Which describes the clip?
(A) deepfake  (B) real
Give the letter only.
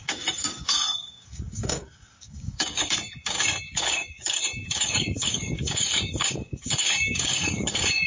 A